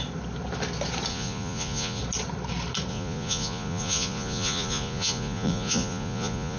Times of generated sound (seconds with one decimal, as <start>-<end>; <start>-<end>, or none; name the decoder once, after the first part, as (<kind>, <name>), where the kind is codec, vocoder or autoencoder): 1.1-2.0 (vocoder, Vocos); 2.9-6.6